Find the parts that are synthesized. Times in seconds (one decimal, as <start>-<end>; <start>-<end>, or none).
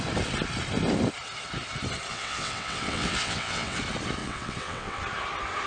2.1-3.8; 4.2-5.0